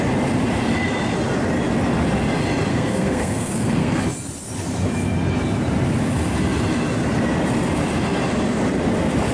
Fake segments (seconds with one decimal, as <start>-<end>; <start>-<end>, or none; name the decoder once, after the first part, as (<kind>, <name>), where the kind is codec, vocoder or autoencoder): 2.7-4.0 (codec, SNAC)